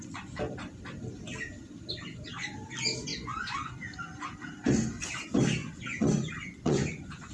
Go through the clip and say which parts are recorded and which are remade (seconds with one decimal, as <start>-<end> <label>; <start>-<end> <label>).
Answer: 0.0-3.1 recorded; 3.1-3.7 remade; 3.7-5.6 recorded; 5.6-7.3 remade